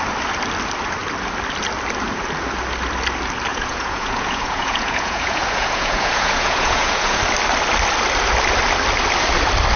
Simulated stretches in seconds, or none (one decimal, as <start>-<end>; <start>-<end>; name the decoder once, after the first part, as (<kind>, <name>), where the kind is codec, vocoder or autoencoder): 3.5-7.2 (vocoder, Vocos)